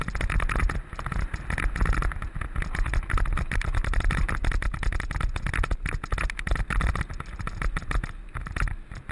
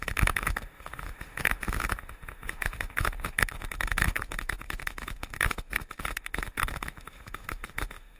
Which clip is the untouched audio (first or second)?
first